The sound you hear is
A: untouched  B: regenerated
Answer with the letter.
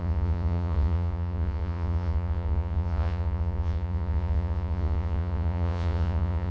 B